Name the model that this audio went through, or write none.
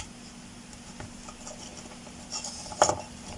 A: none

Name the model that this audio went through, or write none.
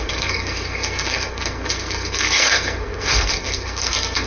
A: codec, SNAC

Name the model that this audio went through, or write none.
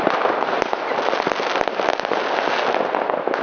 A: none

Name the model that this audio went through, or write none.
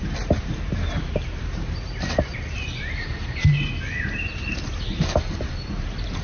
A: vocoder, BigVGAN v2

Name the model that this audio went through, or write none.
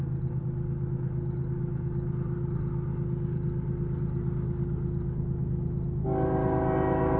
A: none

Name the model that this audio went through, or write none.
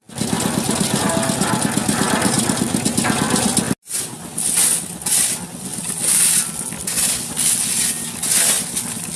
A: none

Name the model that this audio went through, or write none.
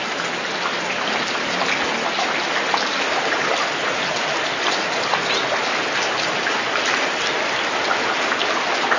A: none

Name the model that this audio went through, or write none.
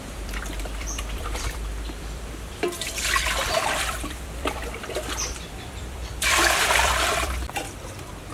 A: vocoder, BigVGAN v2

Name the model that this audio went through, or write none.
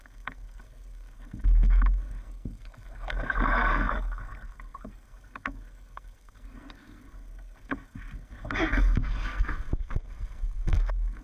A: codec, SNAC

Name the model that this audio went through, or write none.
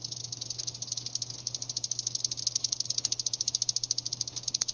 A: none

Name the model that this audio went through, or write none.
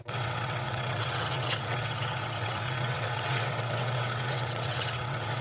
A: vocoder, WaveNeXt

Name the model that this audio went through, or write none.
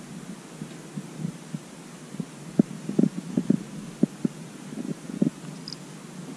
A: none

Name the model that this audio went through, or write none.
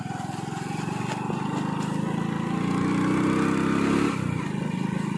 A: none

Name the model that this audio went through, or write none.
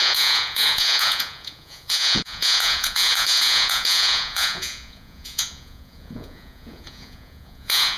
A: vocoder, Vocos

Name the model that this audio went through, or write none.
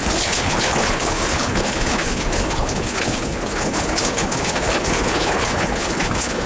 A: codec, HILCodec